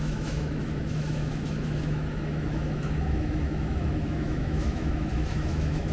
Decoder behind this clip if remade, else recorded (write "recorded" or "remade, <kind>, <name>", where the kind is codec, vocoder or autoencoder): remade, autoencoder, DAC-VAE